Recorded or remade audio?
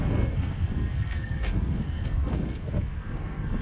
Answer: remade